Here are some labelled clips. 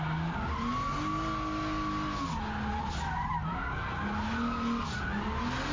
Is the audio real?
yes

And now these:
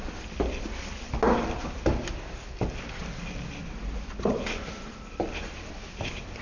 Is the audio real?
yes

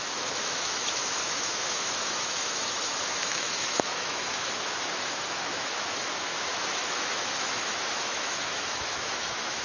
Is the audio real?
no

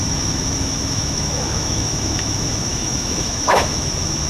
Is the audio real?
no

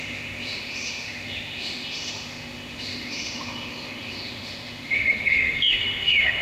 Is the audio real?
no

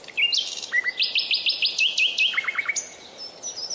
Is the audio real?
yes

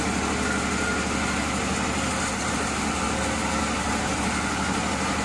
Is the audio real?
yes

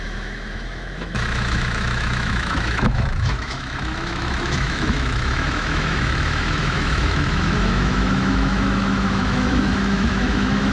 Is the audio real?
no